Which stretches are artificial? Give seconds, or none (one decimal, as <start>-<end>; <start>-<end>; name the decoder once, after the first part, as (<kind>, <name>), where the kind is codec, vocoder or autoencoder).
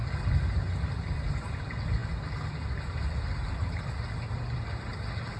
none